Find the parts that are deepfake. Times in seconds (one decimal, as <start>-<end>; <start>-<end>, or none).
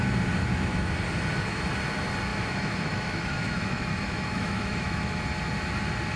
0.4-0.9; 2.3-5.2